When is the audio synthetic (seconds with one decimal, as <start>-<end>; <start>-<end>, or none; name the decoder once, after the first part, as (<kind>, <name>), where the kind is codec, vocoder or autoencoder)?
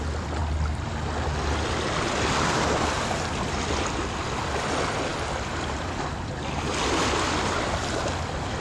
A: none